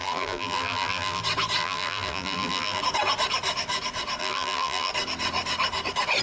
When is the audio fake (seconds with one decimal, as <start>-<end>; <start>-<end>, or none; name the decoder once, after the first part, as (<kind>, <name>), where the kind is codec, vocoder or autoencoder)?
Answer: 0.0-1.2 (vocoder, BigVGAN v2); 1.6-2.8; 4.2-4.9